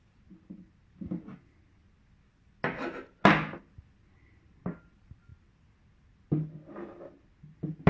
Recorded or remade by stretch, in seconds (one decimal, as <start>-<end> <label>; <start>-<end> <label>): 0.0-7.9 recorded